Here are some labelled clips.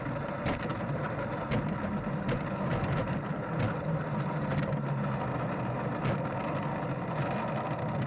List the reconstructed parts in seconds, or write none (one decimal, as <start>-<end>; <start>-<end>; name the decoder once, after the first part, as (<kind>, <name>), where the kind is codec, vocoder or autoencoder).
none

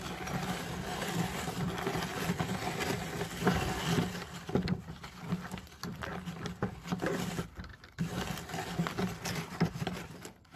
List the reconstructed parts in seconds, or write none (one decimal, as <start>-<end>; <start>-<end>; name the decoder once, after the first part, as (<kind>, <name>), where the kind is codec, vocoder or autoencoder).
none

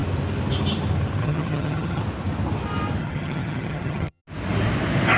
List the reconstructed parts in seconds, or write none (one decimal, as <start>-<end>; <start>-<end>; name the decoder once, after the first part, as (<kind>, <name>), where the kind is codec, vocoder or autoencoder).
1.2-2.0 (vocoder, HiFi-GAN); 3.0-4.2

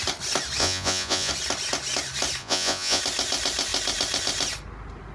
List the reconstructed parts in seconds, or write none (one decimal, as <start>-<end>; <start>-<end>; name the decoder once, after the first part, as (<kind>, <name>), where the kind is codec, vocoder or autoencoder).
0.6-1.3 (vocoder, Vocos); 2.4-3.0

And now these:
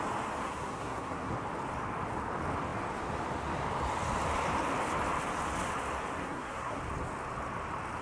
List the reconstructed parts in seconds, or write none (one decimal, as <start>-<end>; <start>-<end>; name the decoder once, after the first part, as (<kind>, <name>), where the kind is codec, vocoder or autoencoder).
0.4-1.3 (codec, SNAC); 6.2-6.8

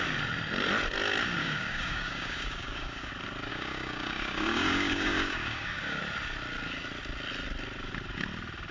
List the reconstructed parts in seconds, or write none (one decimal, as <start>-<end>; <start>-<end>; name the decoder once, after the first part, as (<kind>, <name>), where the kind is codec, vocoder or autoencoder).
1.4-3.1 (codec, DAC); 3.5-6.0